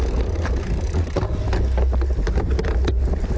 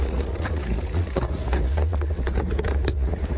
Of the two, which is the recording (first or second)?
first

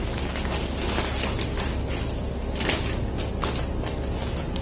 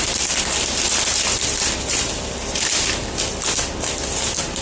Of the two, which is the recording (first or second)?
first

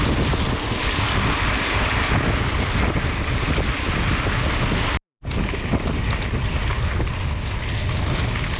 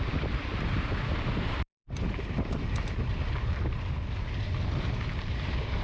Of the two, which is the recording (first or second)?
first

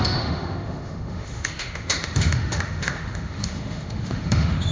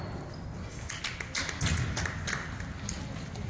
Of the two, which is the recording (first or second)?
second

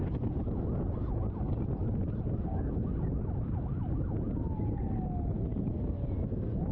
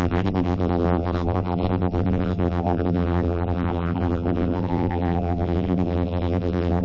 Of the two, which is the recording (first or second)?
first